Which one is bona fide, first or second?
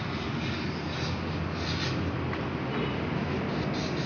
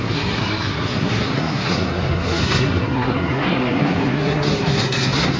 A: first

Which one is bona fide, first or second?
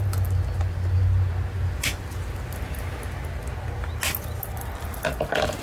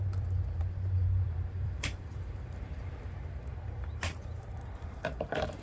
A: first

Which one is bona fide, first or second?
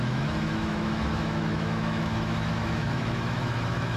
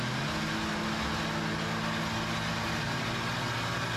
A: second